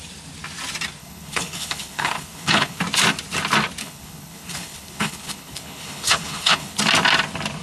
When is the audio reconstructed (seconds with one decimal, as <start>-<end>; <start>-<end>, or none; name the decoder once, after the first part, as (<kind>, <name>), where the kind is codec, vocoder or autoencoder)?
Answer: 1.0-2.8 (codec, HILCodec); 3.8-6.8